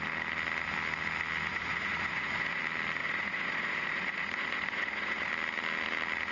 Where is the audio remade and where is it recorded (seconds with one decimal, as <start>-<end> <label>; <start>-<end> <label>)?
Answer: 0.0-1.5 recorded; 1.5-2.6 remade; 2.6-3.0 recorded; 3.0-5.3 remade; 5.3-6.3 recorded